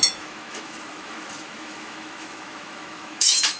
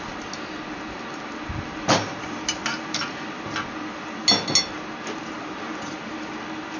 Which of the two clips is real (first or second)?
second